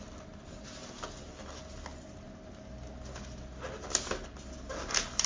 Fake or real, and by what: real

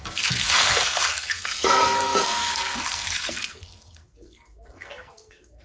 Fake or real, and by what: fake, codec, SNAC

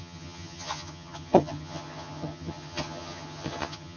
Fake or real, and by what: fake, vocoder, HiFi-GAN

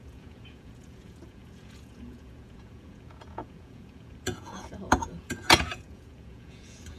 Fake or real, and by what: fake, vocoder, Vocos